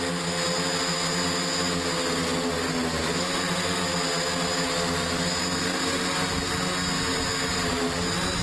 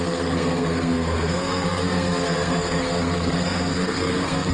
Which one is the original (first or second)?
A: first